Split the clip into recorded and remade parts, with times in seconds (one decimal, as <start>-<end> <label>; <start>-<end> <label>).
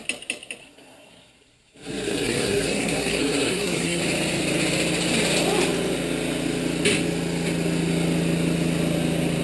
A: 0.0-0.6 recorded; 0.6-4.0 remade; 4.0-9.4 recorded